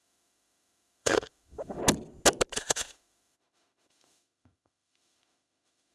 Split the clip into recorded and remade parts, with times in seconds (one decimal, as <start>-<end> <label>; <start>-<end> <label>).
0.0-1.8 remade; 1.8-2.6 recorded; 2.6-5.9 remade